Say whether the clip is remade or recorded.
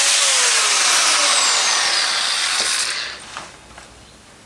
recorded